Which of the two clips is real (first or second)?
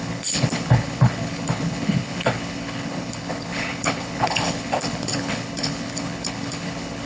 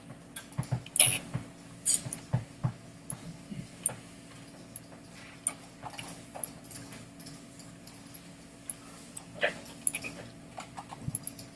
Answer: second